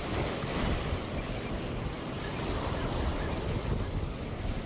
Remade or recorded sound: recorded